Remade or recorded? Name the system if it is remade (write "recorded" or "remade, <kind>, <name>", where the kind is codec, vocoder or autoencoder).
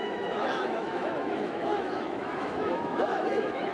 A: remade, autoencoder, DAC-VAE